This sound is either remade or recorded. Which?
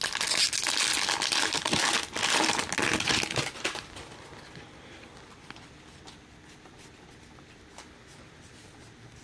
recorded